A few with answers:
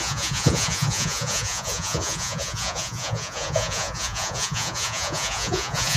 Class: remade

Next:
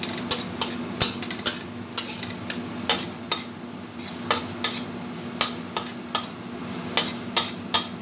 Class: recorded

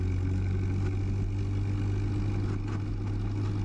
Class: recorded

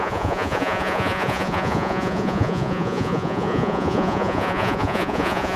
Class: remade